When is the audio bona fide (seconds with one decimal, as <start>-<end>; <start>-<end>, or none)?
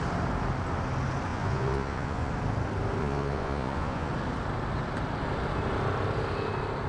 0.0-1.3; 2.3-3.0; 4.1-6.9